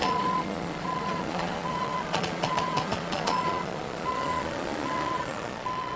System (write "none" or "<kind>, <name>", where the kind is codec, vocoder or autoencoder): vocoder, Vocos